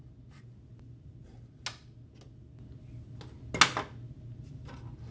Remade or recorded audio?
recorded